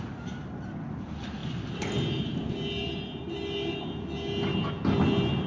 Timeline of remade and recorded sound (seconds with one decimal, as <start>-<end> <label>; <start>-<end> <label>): 0.0-5.5 recorded